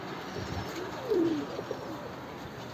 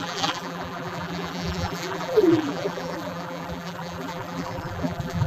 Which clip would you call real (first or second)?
first